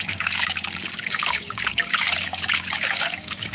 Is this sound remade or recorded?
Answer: remade